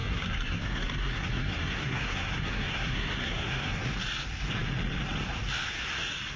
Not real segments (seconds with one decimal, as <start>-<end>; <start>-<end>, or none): 0.0-3.8